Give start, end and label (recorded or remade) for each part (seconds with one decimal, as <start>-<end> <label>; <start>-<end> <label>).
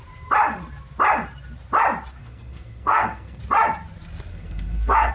0.0-2.2 recorded; 2.2-3.4 remade; 3.4-4.3 recorded; 4.3-5.1 remade